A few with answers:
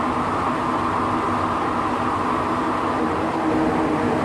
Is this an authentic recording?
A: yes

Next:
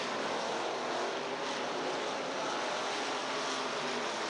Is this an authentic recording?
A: yes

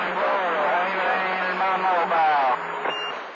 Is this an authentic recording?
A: yes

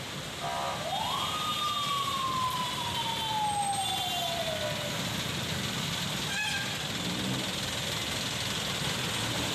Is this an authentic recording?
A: yes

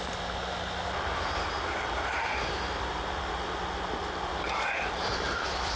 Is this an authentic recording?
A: yes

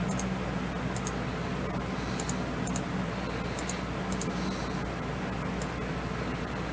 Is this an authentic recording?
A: yes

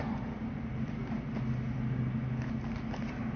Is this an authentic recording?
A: yes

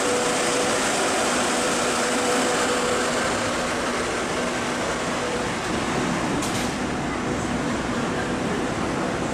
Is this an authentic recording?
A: yes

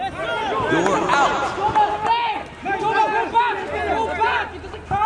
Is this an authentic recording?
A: yes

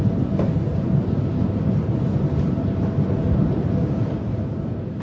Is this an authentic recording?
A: yes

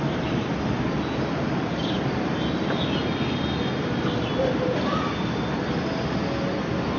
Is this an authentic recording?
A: yes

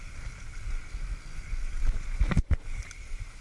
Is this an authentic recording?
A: yes